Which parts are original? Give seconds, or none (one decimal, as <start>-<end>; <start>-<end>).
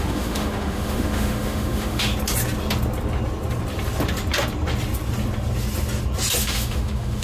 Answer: 2.1-6.4